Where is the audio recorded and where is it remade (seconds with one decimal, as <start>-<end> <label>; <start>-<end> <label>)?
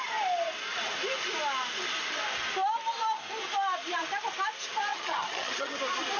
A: 0.0-4.9 recorded; 4.9-5.7 remade; 5.7-6.2 recorded